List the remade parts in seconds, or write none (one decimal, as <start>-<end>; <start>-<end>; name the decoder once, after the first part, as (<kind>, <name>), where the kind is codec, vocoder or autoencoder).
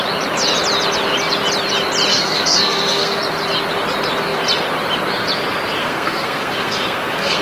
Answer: 2.1-3.2 (codec, SNAC); 5.8-7.4